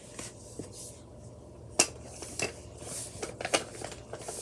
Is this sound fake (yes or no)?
no